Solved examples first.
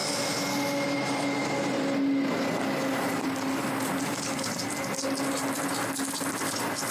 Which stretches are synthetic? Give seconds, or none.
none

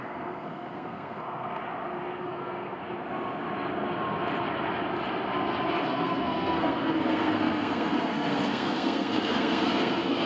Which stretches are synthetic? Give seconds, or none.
0.0-1.6 (codec, SNAC); 2.2-2.8; 5.7-10.3

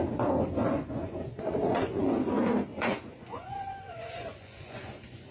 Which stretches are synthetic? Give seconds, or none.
0.6-2.3 (vocoder, Vocos); 2.7-5.3

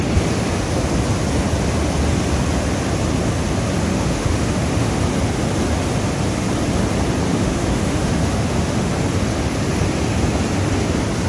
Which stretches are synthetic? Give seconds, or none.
3.9-5.0 (autoencoder, DAC-VAE); 7.3-8.9

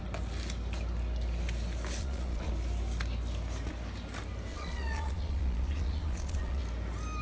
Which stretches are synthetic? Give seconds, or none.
2.0-2.5 (vocoder, Vocos); 4.5-6.6

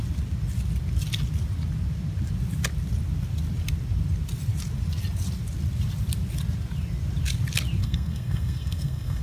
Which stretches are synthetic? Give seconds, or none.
7.8-9.2 (codec, SNAC)

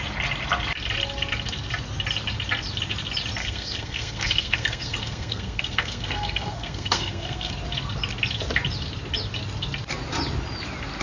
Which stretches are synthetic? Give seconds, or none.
3.4-7.5 (codec, SNAC)